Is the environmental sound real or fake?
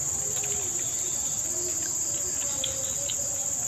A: real